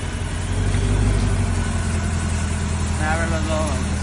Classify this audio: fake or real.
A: real